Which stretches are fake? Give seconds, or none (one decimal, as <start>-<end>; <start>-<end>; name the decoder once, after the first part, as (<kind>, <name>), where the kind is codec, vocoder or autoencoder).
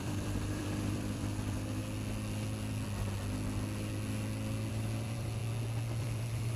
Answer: 0.0-1.8 (vocoder, BigVGAN v2); 4.7-5.4; 6.0-6.6